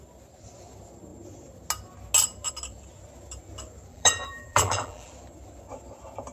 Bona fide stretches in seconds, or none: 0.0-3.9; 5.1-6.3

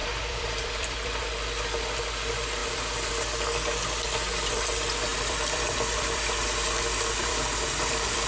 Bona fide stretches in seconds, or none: 1.2-2.6; 3.1-5.1

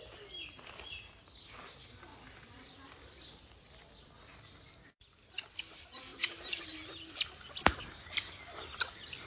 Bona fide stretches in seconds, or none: 0.0-6.1; 8.4-9.3

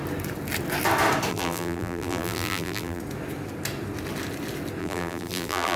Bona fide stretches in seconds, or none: 0.0-1.3; 3.0-4.8

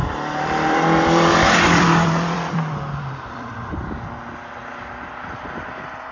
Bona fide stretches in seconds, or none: 3.7-6.1

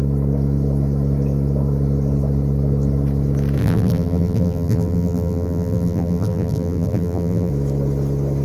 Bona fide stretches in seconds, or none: 0.0-3.6; 7.5-8.4

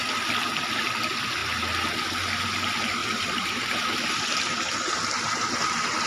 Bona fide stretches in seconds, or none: 0.0-3.0; 4.4-6.1